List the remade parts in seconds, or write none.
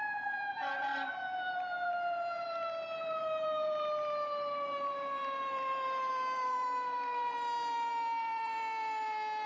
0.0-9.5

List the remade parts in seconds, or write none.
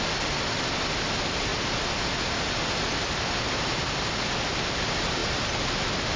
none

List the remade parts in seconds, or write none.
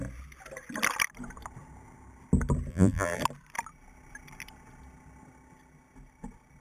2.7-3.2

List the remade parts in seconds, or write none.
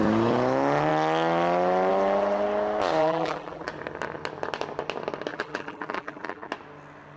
3.0-3.7; 5.3-6.5